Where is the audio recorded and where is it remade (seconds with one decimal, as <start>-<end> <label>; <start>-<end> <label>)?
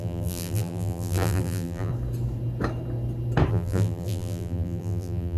0.0-1.9 remade; 1.9-3.5 recorded; 3.5-5.4 remade